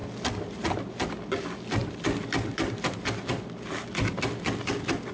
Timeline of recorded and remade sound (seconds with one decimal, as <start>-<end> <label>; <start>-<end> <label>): 0.0-5.1 recorded